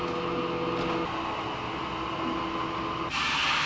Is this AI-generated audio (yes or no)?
no